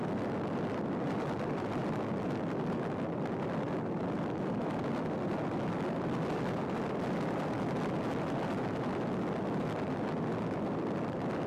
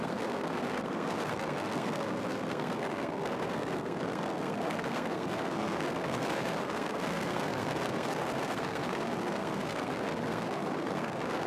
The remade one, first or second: second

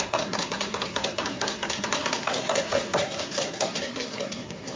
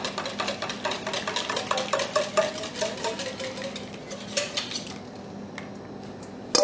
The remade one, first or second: first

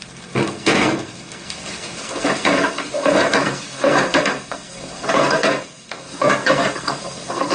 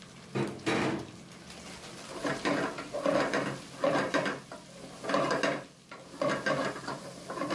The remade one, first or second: first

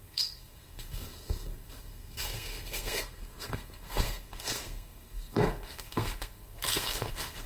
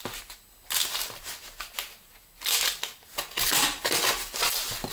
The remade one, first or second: first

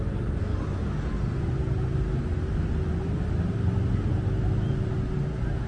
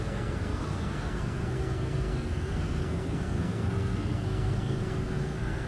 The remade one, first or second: second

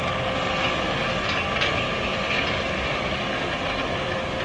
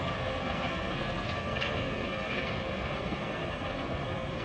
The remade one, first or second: second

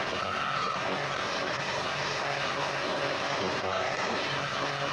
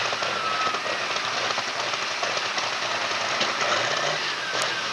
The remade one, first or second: first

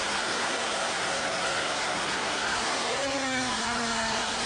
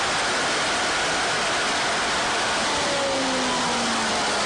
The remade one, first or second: first